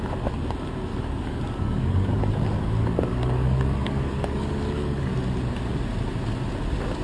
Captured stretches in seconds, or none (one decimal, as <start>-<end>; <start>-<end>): 0.0-0.9; 5.1-7.0